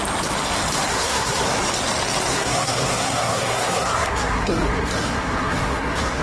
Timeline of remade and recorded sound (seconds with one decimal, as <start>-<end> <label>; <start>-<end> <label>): 0.0-0.9 recorded; 0.9-1.6 remade; 1.6-2.3 recorded; 2.3-6.2 remade